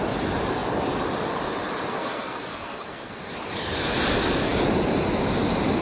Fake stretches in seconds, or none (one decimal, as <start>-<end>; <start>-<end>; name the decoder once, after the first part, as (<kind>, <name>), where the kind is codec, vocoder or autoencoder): 1.9-3.3 (codec, SNAC)